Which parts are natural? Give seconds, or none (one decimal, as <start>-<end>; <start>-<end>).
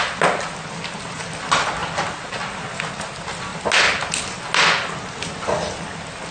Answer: 0.0-6.3